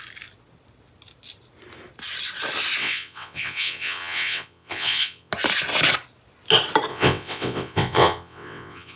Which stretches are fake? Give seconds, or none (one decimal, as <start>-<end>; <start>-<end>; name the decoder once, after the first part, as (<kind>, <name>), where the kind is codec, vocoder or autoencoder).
2.8-5.3 (vocoder, WaveNeXt); 6.9-9.0